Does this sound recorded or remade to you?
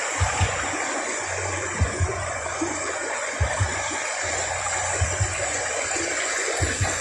remade